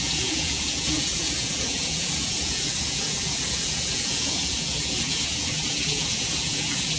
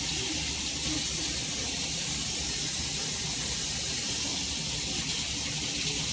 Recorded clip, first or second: second